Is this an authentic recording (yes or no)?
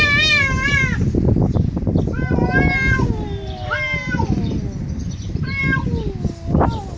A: yes